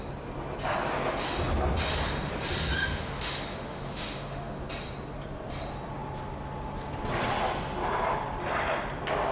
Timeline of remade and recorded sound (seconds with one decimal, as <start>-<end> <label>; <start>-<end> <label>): 0.0-2.8 recorded; 2.8-4.6 remade; 4.6-9.3 recorded